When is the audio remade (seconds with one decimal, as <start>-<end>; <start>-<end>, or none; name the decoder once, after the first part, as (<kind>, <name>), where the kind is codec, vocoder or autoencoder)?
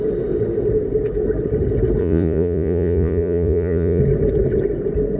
2.0-4.0 (vocoder, Vocos)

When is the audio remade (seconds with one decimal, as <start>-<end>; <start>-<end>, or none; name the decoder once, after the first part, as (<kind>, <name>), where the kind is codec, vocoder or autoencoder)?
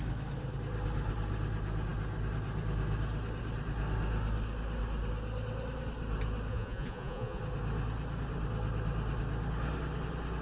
6.5-7.4 (vocoder, Vocos)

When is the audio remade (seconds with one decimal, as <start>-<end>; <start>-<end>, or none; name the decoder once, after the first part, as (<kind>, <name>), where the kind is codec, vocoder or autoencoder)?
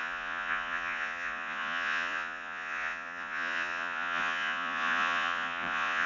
0.0-6.1 (vocoder, Vocos)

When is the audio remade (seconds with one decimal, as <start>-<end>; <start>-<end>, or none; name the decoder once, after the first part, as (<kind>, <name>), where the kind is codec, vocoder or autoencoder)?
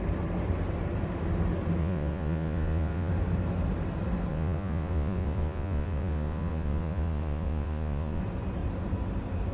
1.8-3.1 (vocoder, Vocos); 4.3-8.2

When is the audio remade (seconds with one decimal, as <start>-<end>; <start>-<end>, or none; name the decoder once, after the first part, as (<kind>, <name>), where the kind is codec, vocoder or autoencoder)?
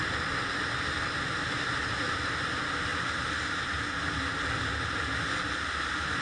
none